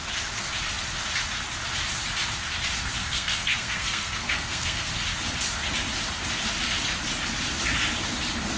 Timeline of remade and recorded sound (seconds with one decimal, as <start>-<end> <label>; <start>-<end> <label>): 0.0-3.0 recorded; 3.0-4.9 remade; 4.9-8.6 recorded